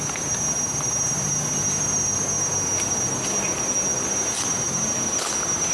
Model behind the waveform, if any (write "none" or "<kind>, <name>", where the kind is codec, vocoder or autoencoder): none